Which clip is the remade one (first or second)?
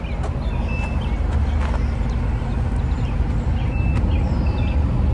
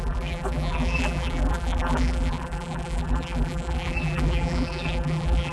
second